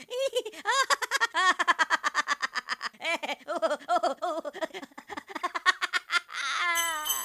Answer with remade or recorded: recorded